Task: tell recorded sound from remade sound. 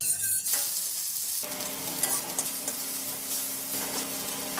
recorded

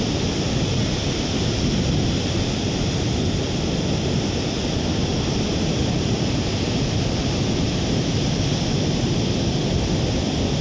recorded